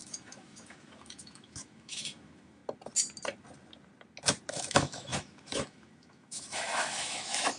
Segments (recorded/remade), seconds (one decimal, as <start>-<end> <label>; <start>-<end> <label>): 0.0-2.6 remade; 2.6-4.5 recorded; 4.5-7.6 remade